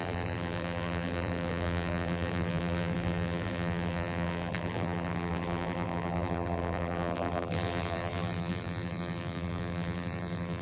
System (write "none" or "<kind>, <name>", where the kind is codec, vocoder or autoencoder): vocoder, BigVGAN v2